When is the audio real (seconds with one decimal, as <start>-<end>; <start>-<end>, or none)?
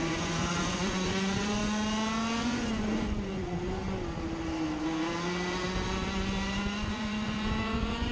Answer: 1.6-2.4; 3.8-6.9